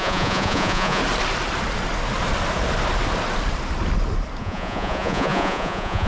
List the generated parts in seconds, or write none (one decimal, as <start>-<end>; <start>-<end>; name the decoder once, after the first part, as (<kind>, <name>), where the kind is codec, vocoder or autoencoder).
0.0-1.0 (vocoder, Vocos); 4.4-6.1